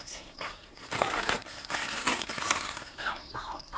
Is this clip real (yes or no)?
no